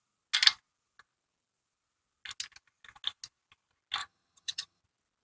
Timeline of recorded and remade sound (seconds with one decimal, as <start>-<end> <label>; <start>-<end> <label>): 0.0-4.0 recorded; 4.0-4.8 remade; 4.8-5.2 recorded